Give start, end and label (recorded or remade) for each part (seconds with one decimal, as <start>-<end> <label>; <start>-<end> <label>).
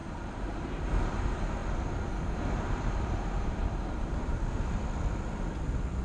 0.0-0.8 remade; 0.8-6.0 recorded